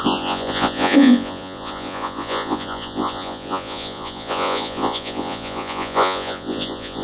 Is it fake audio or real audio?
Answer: fake